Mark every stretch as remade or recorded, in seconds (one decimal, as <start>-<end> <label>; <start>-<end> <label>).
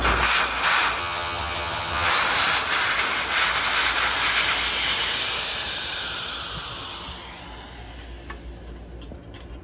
0.0-1.0 recorded; 1.0-2.1 remade; 2.1-9.6 recorded